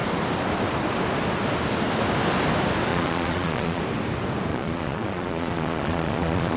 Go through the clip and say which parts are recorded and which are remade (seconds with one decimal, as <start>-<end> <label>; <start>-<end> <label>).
0.0-2.9 recorded; 2.9-3.8 remade; 3.8-4.5 recorded; 4.5-6.6 remade